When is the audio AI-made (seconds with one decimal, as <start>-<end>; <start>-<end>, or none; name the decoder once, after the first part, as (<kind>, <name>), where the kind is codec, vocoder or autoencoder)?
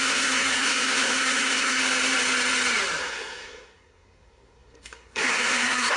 0.0-1.8 (codec, SNAC); 3.0-6.0